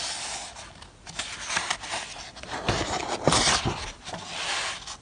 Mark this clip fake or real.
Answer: real